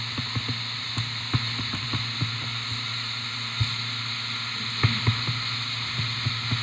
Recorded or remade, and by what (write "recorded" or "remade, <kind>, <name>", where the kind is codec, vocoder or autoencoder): recorded